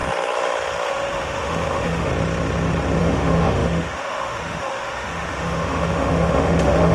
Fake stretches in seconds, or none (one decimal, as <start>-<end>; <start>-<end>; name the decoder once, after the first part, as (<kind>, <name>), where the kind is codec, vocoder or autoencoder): 0.9-2.1 (autoencoder, DAC-VAE); 3.0-6.9